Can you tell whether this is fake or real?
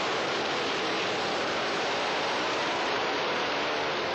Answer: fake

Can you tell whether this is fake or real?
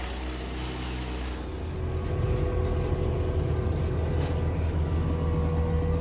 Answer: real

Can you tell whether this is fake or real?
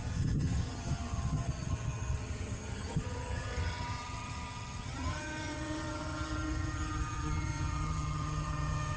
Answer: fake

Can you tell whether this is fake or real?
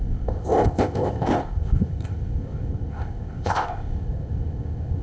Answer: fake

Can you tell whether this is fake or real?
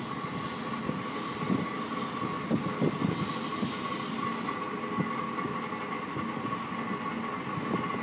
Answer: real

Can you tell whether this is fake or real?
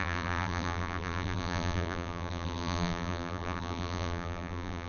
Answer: fake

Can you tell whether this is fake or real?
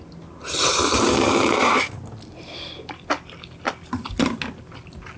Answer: real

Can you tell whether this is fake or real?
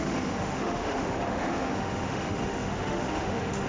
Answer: fake